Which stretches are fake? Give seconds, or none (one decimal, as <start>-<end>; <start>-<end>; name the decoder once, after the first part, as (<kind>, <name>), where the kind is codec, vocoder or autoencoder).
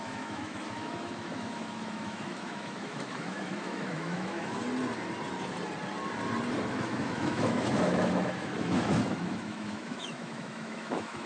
0.0-4.6 (autoencoder, DAC-VAE); 6.7-11.3